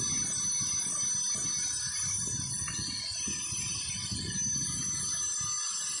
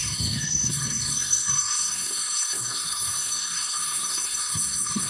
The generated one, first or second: second